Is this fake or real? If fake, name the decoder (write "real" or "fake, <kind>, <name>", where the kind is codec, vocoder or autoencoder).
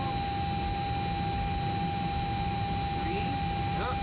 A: real